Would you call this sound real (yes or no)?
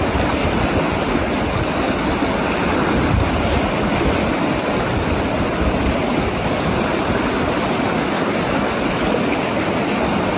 yes